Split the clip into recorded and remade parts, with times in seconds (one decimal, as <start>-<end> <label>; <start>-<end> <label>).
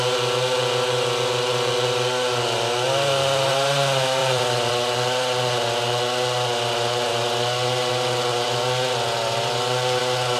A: 0.0-4.2 recorded; 4.2-4.7 remade; 4.7-8.3 recorded; 8.3-10.0 remade; 10.0-10.4 recorded